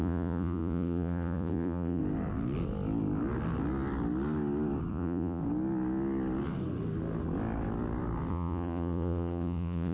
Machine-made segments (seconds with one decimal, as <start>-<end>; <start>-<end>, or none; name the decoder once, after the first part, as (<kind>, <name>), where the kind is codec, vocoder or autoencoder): 0.0-2.0 (vocoder, Vocos); 4.9-5.4; 8.3-9.9